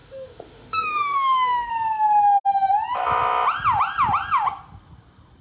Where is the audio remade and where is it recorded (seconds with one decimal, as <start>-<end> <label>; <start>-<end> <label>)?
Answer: 0.0-1.7 remade; 1.7-5.4 recorded